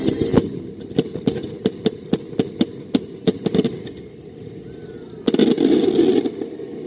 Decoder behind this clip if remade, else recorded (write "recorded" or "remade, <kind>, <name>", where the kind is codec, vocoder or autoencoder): recorded